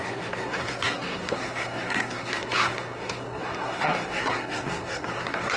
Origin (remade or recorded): remade